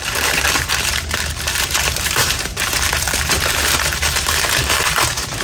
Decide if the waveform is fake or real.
fake